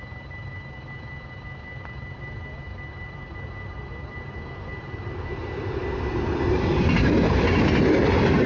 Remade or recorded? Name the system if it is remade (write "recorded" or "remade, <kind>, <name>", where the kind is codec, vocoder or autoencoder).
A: recorded